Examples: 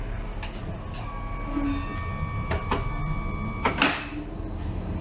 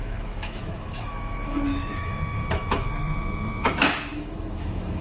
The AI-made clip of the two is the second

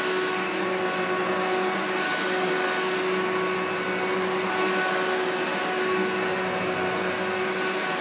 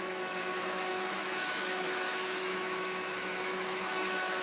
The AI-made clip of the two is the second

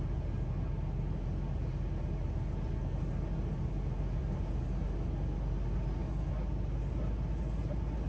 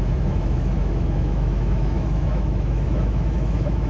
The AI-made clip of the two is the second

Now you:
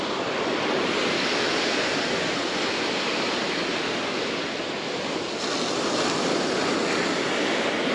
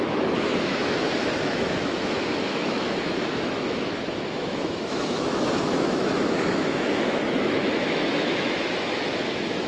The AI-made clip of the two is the second